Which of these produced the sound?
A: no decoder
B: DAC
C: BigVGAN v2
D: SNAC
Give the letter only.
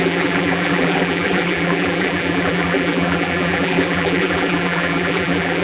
C